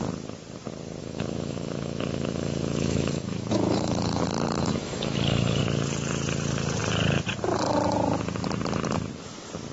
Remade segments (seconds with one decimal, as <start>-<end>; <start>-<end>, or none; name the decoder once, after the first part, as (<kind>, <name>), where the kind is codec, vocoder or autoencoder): 1.0-5.6 (autoencoder, DAC-VAE)